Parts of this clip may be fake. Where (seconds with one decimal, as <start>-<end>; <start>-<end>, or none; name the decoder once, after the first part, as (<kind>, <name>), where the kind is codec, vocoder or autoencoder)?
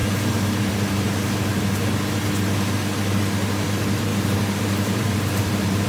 0.0-1.6 (vocoder, BigVGAN v2); 4.1-5.9